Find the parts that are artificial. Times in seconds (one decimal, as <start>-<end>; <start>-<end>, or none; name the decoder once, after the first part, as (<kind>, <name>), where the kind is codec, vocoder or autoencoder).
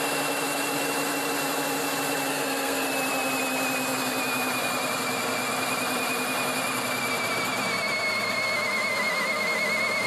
2.3-2.9 (codec, SNAC)